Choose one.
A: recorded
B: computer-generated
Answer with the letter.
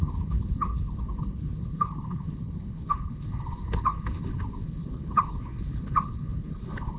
B